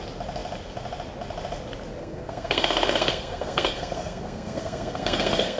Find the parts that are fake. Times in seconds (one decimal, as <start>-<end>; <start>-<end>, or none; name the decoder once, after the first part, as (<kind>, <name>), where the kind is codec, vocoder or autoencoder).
2.0-5.6 (codec, SNAC)